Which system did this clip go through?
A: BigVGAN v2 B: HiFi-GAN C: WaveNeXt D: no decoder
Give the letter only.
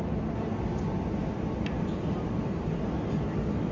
D